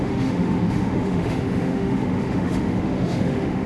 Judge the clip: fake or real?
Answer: fake